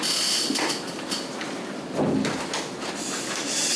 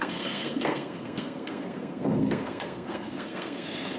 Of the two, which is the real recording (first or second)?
first